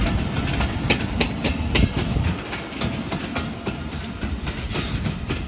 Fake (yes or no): no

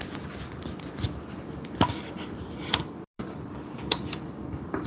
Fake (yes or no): yes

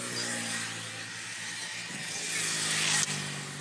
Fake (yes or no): no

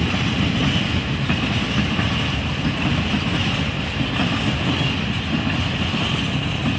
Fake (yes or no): no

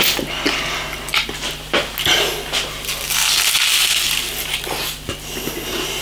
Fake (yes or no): no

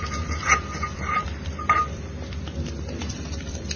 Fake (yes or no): yes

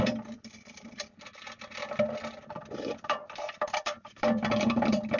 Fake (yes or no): yes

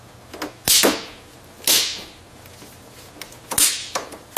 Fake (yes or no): no